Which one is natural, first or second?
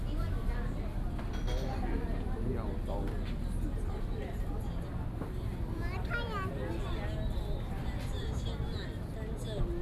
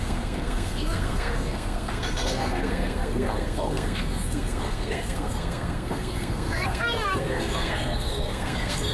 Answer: first